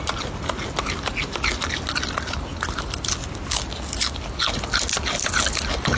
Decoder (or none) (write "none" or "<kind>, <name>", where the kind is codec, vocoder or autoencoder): none